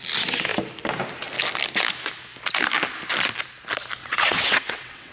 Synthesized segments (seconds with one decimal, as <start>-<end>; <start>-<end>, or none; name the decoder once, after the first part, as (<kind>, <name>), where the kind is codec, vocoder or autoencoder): 4.0-5.1 (vocoder, WaveNeXt)